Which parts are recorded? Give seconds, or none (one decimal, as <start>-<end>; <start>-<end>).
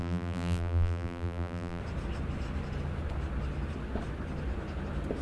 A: 1.8-5.2